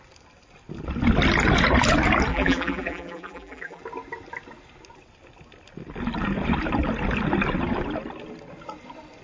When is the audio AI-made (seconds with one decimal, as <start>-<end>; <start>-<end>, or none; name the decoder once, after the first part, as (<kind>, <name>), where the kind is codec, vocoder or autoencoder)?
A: 2.3-3.8 (vocoder, BigVGAN v2)